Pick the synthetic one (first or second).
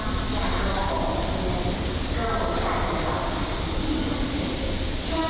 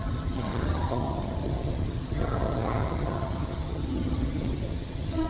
second